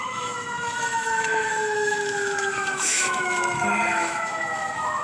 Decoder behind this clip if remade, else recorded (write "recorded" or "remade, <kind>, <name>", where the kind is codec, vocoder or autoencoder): remade, autoencoder, DAC-VAE